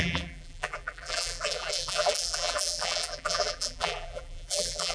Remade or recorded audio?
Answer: remade